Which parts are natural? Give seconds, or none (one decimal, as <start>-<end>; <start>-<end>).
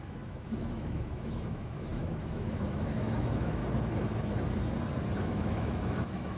3.6-5.2